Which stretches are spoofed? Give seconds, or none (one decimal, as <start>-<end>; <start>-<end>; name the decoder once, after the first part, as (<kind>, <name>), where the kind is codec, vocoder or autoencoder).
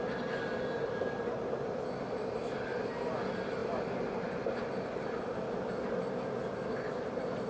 none